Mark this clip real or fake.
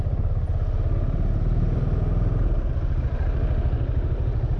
real